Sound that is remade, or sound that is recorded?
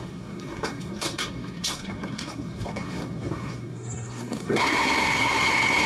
remade